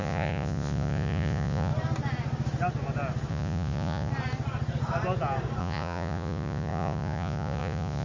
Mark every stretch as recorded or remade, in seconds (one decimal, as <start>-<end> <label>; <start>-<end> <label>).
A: 0.0-1.7 remade; 1.7-3.3 recorded; 3.3-4.1 remade; 4.1-5.6 recorded; 5.6-8.0 remade